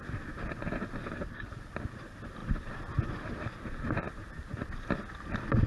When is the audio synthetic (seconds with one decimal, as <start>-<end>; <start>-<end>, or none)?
1.0-1.5